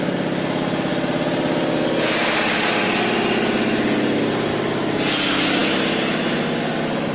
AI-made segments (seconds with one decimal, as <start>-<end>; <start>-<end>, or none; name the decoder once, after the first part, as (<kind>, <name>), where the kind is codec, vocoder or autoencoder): none